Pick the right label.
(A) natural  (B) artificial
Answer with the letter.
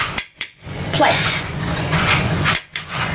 B